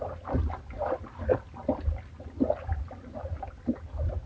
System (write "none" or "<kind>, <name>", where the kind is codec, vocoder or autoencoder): none